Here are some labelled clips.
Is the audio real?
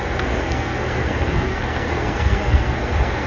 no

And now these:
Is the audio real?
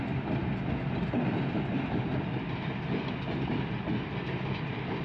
yes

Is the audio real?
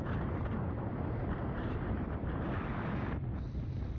yes